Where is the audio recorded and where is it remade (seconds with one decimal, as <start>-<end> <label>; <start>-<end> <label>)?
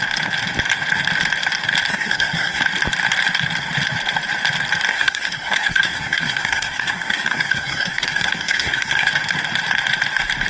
0.0-1.9 recorded; 1.9-2.6 remade; 2.6-4.9 recorded; 4.9-9.1 remade; 9.1-10.5 recorded